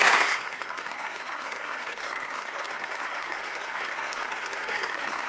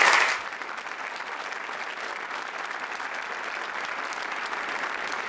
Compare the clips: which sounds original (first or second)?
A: second